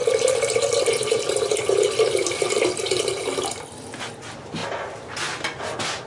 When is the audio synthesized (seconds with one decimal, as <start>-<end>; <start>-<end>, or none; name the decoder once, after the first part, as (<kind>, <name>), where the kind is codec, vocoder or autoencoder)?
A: 0.0-3.2 (vocoder, BigVGAN v2)